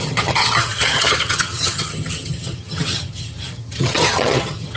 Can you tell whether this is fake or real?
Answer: fake